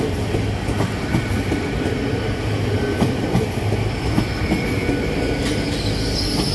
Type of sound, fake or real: real